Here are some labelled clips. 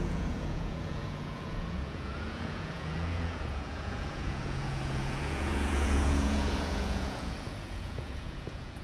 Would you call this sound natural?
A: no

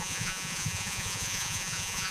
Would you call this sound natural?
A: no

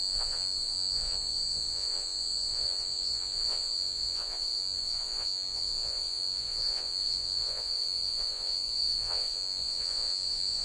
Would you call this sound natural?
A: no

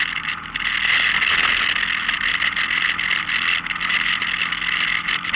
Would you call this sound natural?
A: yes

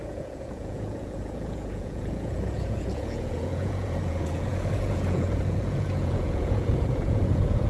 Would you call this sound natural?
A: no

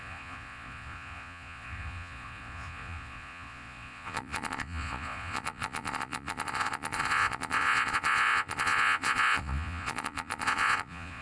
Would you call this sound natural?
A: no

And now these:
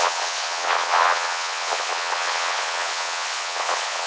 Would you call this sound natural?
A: no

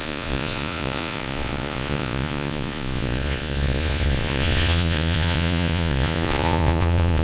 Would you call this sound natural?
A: no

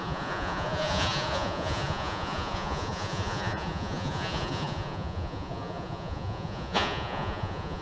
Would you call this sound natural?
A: no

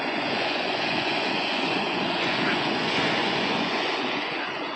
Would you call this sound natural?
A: no